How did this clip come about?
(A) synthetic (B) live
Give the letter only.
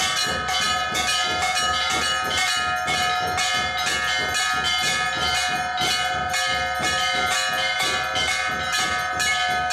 B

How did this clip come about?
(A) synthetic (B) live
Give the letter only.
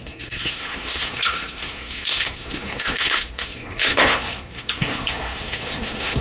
A